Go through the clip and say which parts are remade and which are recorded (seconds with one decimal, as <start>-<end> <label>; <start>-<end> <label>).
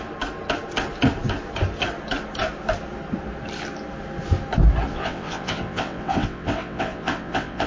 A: 0.0-4.9 recorded; 4.9-7.7 remade